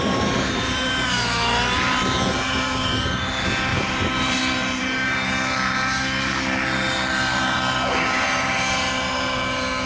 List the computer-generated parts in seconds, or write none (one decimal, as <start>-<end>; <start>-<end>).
3.7-4.8